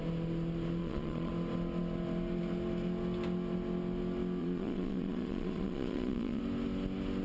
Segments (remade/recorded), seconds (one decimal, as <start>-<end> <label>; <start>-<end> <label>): 0.0-0.8 recorded; 0.8-1.3 remade; 1.3-4.4 recorded; 4.4-6.4 remade; 6.4-7.2 recorded